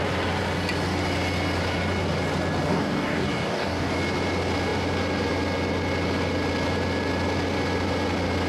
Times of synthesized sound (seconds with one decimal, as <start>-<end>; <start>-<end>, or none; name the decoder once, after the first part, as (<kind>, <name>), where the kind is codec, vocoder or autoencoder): 2.7-3.9 (codec, DAC)